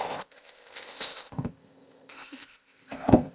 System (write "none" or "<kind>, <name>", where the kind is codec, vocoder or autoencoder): codec, ZipCodec